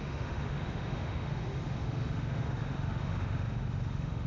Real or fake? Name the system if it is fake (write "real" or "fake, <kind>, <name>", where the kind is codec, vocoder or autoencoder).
fake, autoencoder, DAC-VAE